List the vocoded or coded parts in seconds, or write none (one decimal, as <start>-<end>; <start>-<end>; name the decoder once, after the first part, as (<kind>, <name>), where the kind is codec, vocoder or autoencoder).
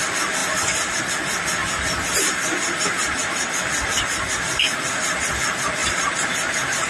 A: 0.4-1.0 (vocoder, BigVGAN v2); 1.6-3.5; 5.8-6.9